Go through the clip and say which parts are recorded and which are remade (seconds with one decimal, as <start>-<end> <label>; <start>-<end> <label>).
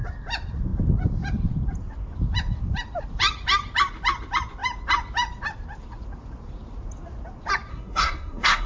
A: 0.0-7.7 recorded; 7.7-8.7 remade